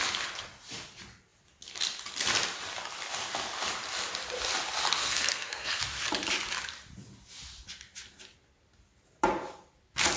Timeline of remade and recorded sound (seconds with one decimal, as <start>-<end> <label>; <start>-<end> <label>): 0.0-5.0 recorded; 5.0-5.8 remade; 5.8-10.2 recorded